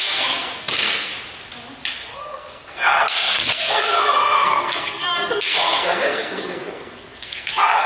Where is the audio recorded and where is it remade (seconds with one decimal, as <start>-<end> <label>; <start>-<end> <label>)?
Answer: 0.0-1.1 remade; 1.1-1.9 recorded; 1.9-7.9 remade